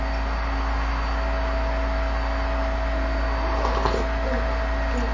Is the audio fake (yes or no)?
no